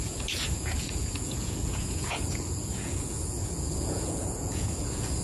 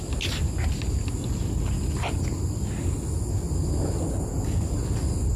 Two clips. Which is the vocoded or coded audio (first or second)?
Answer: first